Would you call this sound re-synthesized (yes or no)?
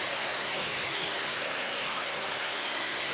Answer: yes